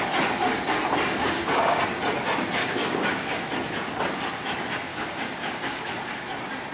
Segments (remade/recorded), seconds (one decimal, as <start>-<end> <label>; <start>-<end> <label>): 0.0-1.2 recorded; 1.2-1.8 remade; 1.8-2.6 recorded; 2.6-3.4 remade; 3.4-4.9 recorded; 4.9-5.9 remade; 5.9-6.7 recorded

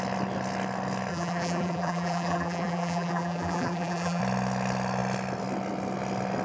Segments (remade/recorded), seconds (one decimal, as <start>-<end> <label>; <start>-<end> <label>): 0.0-1.1 recorded; 1.1-4.2 remade; 4.2-6.4 recorded

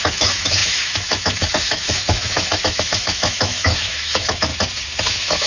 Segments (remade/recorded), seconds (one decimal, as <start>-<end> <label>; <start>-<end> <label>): 0.0-4.5 remade; 4.5-5.1 recorded; 5.1-5.5 remade

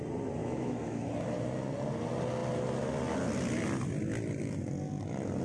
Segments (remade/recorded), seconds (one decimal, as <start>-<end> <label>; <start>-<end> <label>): 0.0-0.4 recorded; 0.4-1.1 remade; 1.1-5.4 recorded

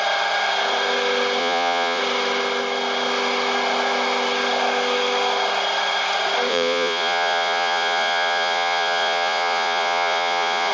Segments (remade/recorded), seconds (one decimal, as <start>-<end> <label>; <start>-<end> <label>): 0.0-1.4 recorded; 1.4-2.0 remade; 2.0-6.5 recorded; 6.5-10.7 remade

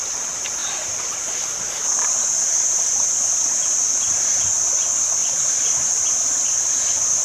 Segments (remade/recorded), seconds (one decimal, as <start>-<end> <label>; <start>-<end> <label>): 0.0-0.6 recorded; 0.6-3.8 remade; 3.8-5.2 recorded; 5.2-6.8 remade; 6.8-7.2 recorded

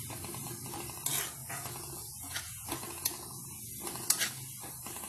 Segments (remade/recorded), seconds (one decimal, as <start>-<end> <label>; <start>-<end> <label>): 0.0-1.4 recorded; 1.4-3.4 remade; 3.4-5.1 recorded

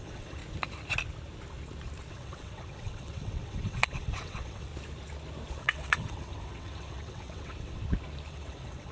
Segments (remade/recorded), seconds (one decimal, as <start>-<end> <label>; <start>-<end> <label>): 0.0-0.4 remade; 0.4-2.1 recorded; 2.1-4.7 remade; 4.7-5.6 recorded; 5.6-7.8 remade; 7.8-8.3 recorded; 8.3-8.9 remade